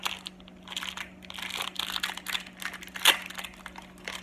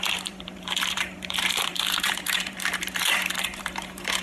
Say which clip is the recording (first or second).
first